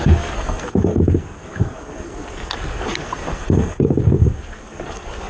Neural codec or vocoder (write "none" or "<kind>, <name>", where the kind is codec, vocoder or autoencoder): codec, SNAC